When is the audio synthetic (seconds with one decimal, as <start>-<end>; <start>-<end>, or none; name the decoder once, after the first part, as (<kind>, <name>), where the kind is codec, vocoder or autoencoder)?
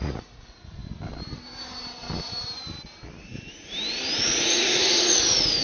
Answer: 0.0-0.8 (vocoder, Vocos); 4.2-5.6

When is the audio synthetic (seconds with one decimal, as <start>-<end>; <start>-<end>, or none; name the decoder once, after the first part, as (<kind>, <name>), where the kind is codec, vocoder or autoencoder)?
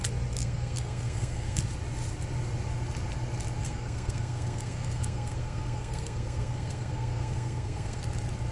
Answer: 0.4-1.6 (codec, SNAC); 3.6-8.0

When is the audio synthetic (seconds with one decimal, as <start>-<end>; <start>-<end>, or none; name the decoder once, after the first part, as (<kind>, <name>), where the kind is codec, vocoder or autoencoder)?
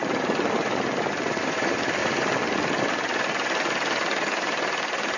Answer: none